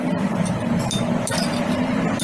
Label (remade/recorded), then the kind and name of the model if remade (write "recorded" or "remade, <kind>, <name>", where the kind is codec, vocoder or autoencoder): recorded